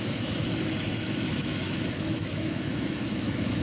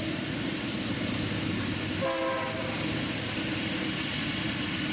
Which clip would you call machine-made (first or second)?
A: first